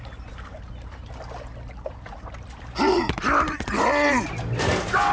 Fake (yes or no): no